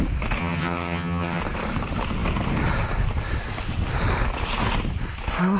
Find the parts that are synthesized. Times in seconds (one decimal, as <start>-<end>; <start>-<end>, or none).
0.4-1.4